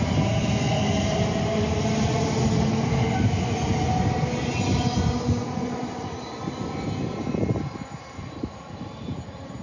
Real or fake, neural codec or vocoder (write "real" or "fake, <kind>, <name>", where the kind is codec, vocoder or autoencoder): real